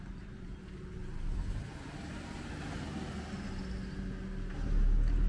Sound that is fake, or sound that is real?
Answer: real